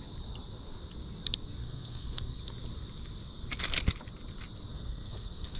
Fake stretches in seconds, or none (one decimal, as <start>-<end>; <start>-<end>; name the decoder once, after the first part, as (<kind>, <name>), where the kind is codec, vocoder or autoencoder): 1.6-2.4 (codec, SNAC); 4.7-5.6